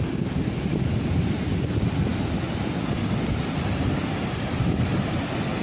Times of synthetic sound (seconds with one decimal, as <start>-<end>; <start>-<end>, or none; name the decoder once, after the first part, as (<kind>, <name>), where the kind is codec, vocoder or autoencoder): none